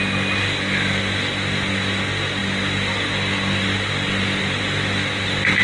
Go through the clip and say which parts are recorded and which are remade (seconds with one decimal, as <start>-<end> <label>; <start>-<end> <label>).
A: 0.0-5.6 recorded